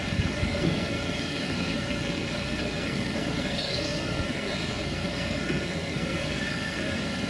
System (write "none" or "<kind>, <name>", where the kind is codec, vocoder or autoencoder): codec, SNAC